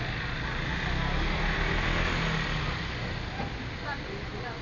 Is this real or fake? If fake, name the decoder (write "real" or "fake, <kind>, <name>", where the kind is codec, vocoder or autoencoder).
real